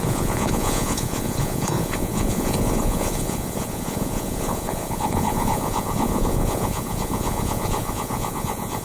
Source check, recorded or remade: remade